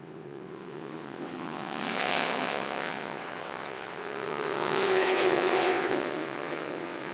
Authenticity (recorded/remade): remade